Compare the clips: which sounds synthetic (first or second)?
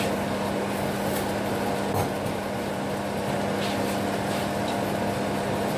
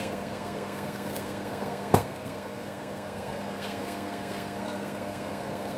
second